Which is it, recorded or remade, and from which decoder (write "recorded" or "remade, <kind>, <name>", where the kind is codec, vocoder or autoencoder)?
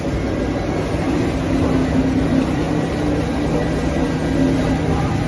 recorded